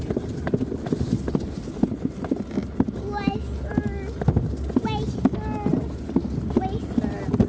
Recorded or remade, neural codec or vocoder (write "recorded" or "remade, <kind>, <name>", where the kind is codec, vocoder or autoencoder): recorded